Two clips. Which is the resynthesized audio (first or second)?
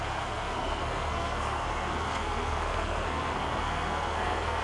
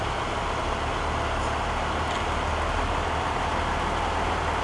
first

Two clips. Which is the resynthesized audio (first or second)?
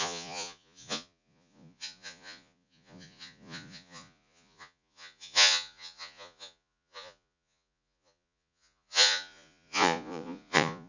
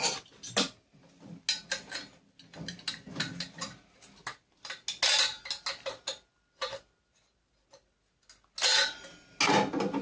first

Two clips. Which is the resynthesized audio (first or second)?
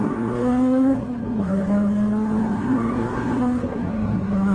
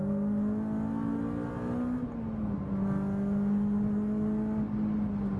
first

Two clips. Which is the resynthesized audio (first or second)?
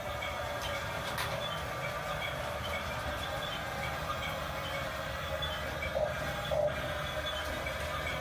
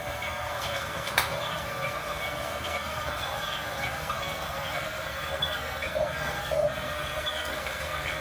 second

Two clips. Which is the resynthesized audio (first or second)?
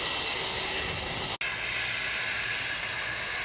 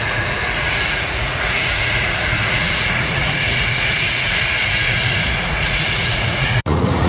second